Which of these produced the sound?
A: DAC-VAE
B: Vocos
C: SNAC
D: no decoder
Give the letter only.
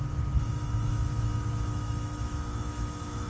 A